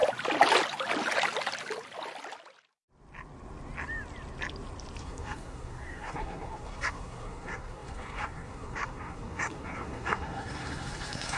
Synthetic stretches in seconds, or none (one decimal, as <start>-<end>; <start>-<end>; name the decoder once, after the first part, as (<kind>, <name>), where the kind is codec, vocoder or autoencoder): 5.0-11.4 (codec, SNAC)